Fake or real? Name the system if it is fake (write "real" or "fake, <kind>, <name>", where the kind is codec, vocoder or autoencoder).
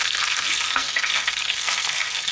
fake, codec, SNAC